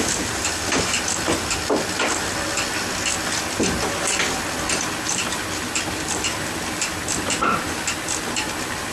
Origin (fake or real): real